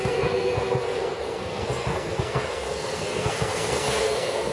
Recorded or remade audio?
remade